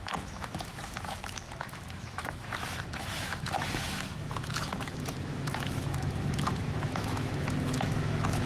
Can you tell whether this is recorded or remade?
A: remade